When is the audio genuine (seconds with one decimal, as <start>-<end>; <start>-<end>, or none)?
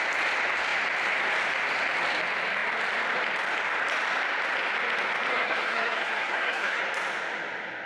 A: 0.0-5.3; 6.8-7.9